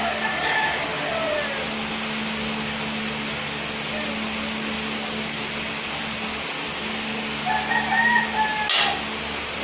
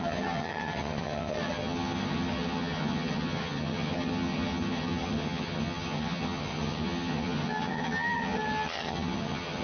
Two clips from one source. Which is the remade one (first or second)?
second